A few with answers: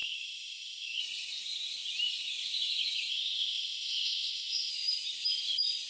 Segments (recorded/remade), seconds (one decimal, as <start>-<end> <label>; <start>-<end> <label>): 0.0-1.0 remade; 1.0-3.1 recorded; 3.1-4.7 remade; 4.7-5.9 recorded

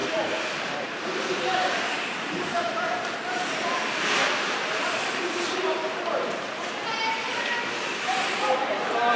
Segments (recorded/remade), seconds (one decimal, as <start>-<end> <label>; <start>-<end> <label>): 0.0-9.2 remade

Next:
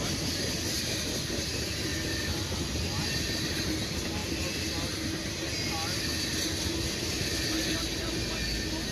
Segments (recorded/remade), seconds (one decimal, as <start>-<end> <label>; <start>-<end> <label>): 0.0-8.9 recorded

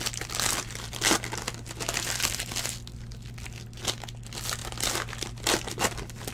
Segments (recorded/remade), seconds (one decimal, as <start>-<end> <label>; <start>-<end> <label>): 0.0-6.3 recorded

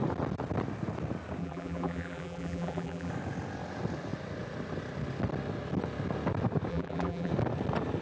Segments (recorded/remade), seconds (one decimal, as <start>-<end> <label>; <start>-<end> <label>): 0.0-1.4 recorded; 1.4-3.1 remade; 3.1-6.7 recorded; 6.7-7.3 remade; 7.3-8.0 recorded

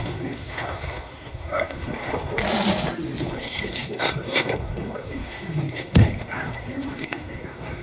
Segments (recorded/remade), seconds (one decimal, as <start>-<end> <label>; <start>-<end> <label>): 0.0-2.4 remade; 2.4-3.2 recorded; 3.2-7.8 remade

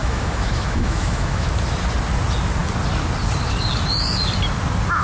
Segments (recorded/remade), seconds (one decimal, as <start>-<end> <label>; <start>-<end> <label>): 0.0-1.5 remade; 1.5-5.0 recorded

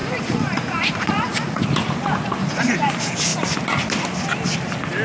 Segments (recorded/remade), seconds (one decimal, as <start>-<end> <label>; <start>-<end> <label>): 0.0-1.6 remade; 1.6-2.4 recorded; 2.4-2.9 remade; 2.9-5.0 recorded